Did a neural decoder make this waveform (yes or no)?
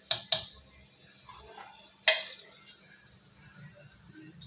no